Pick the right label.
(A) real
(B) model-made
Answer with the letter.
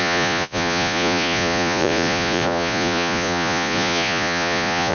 B